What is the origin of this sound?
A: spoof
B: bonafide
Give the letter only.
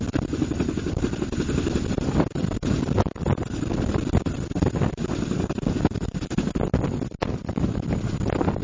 B